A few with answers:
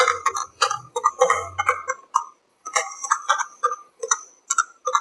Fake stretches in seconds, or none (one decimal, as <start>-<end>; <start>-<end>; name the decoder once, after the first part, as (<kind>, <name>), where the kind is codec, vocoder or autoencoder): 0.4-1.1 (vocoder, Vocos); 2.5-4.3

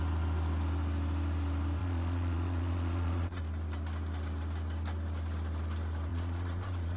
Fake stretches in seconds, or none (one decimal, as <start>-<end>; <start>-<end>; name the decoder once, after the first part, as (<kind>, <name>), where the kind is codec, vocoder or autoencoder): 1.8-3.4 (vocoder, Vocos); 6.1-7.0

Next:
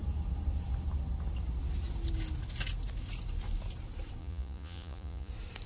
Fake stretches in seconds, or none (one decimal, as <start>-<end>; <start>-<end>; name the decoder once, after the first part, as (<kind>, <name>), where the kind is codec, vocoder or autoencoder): 4.2-5.3 (vocoder, Vocos)

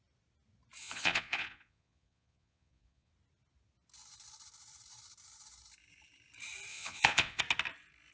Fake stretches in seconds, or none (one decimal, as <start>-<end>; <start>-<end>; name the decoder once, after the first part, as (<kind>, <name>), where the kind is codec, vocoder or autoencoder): 0.8-3.1 (vocoder, Vocos); 6.7-7.4

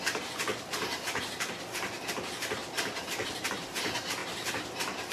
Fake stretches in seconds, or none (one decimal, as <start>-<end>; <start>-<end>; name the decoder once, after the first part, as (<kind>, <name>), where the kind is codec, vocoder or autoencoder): none

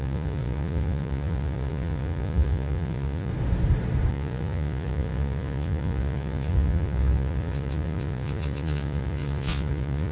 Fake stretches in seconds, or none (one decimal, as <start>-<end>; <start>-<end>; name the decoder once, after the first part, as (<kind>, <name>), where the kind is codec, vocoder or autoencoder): 0.0-3.3 (vocoder, Vocos); 4.1-10.1

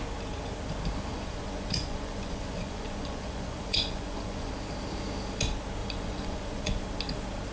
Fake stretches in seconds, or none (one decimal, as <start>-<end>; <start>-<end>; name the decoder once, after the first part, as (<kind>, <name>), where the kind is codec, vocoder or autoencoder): 1.1-4.5 (vocoder, Vocos); 5.8-6.8

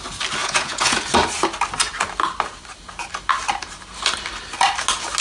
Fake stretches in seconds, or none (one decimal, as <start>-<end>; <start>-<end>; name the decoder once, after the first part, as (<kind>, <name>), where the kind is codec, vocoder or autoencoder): 0.4-1.0 (vocoder, Vocos)